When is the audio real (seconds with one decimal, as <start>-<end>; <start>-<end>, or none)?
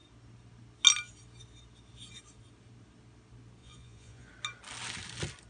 0.0-3.6; 4.3-5.5